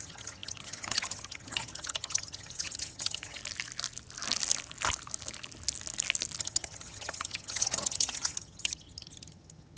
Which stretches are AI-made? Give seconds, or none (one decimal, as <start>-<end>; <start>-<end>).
0.0-3.4; 6.4-9.8